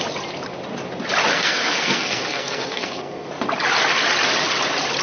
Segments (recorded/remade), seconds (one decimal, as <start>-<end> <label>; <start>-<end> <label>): 0.0-1.3 recorded; 1.3-3.3 remade; 3.3-5.0 recorded